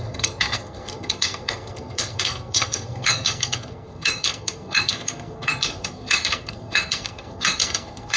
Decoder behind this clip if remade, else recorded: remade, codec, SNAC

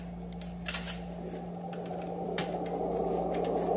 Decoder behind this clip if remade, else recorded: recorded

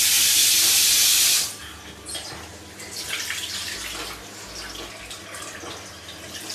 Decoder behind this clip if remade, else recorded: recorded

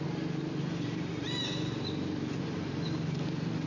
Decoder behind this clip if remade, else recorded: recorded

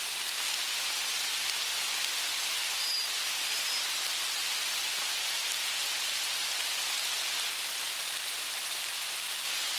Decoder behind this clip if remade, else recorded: recorded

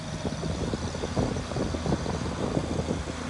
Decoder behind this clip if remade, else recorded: recorded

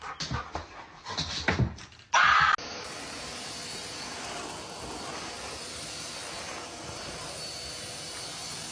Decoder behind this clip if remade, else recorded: recorded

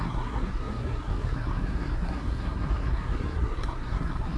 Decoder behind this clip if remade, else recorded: remade, codec, SNAC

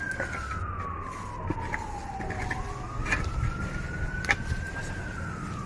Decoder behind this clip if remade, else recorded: recorded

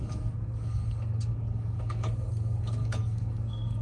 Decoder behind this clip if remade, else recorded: remade, codec, SNAC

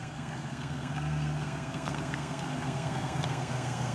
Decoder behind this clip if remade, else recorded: remade, codec, SNAC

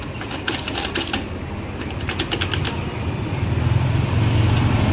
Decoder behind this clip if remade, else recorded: recorded